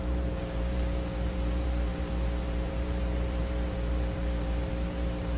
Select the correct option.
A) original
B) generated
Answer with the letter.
B